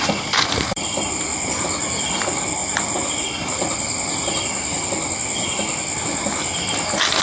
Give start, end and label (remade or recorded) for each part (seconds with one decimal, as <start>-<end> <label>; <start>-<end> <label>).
0.0-7.2 recorded